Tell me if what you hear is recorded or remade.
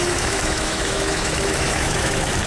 remade